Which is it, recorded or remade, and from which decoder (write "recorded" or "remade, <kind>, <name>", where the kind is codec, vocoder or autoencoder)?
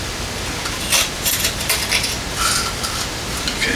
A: recorded